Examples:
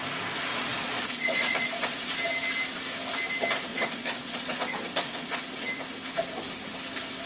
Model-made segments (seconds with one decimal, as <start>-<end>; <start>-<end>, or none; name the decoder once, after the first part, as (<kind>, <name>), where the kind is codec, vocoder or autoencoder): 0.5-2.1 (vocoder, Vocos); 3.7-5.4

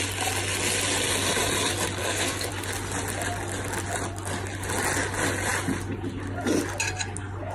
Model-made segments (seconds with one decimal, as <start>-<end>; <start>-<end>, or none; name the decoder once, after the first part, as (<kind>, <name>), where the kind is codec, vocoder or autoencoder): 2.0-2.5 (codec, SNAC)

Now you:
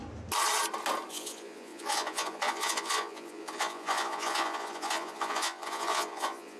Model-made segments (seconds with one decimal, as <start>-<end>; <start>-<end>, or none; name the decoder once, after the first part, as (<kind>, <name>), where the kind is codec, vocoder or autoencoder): 1.1-6.6 (vocoder, Vocos)

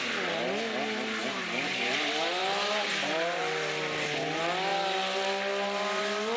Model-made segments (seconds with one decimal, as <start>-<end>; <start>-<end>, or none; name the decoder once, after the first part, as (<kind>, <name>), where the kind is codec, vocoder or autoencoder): 1.2-3.4 (vocoder, BigVGAN v2)

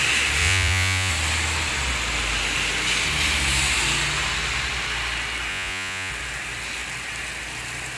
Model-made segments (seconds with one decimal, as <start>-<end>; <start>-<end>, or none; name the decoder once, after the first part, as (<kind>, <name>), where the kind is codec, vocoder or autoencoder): 0.4-1.1 (vocoder, Vocos); 5.5-6.1

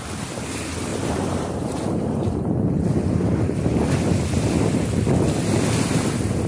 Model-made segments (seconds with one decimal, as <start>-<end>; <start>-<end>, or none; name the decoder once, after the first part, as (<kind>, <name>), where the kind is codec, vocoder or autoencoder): 0.9-2.5 (vocoder, BigVGAN v2)

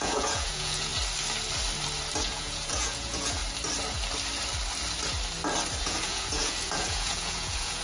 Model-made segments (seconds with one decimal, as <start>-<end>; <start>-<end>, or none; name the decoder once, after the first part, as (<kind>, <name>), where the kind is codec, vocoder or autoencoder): 0.0-0.9 (vocoder, Vocos); 2.2-3.4; 5.8-7.8